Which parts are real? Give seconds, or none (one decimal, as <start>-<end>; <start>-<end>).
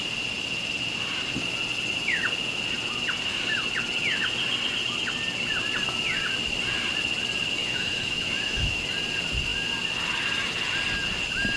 0.0-7.6; 8.8-11.6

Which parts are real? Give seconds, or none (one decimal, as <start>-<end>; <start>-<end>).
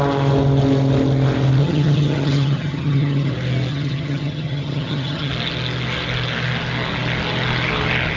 0.0-1.6; 3.3-3.7; 5.3-8.2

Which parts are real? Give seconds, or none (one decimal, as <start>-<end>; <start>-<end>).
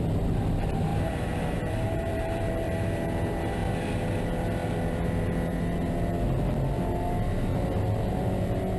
0.0-0.9; 2.5-8.8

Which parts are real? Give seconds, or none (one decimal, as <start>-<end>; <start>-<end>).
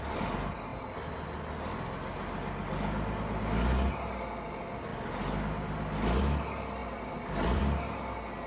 0.0-6.8; 7.6-8.5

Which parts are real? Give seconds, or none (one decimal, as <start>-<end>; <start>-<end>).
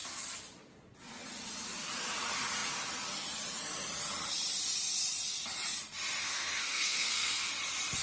0.0-6.2; 7.5-8.0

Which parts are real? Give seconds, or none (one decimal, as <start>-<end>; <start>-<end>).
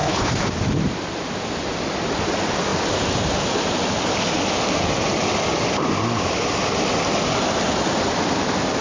0.5-8.8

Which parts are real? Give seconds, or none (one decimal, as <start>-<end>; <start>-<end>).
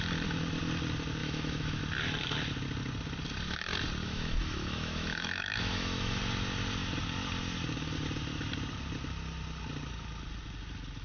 0.0-1.2; 1.8-4.0; 6.2-11.0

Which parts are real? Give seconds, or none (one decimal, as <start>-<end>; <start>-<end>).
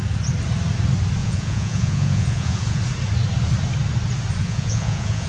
0.0-1.2; 2.8-4.4